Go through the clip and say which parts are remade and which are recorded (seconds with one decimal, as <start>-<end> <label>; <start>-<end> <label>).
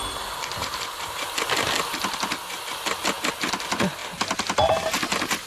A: 0.0-5.5 recorded